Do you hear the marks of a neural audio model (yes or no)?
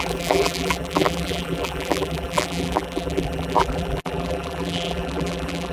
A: yes